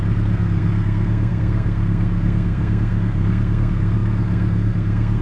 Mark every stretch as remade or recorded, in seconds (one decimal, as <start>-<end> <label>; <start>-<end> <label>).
0.0-5.2 remade